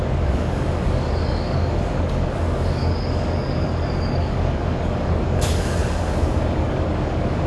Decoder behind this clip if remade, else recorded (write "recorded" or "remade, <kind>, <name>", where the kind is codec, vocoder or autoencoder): remade, codec, DAC